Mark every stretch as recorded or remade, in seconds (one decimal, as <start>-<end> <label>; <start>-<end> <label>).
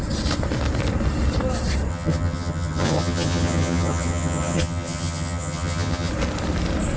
0.0-1.9 recorded; 1.9-6.1 remade; 6.1-7.0 recorded